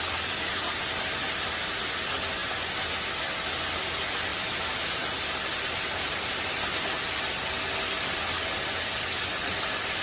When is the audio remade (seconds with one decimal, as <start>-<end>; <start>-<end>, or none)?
4.3-7.3